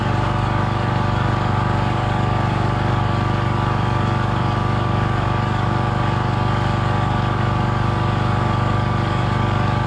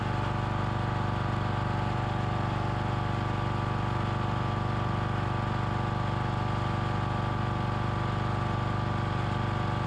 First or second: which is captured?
second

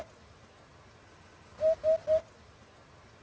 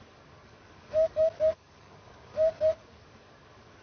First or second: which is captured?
first